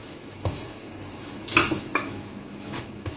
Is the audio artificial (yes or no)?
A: yes